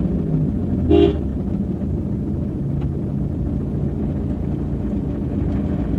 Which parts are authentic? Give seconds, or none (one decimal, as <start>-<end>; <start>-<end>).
0.0-6.0